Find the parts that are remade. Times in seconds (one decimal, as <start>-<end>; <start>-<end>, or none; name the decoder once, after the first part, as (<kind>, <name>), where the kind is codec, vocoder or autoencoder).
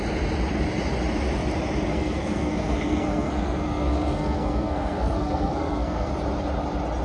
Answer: 1.9-6.1 (codec, SNAC)